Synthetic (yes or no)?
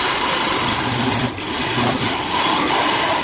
no